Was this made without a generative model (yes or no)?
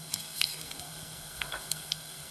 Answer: no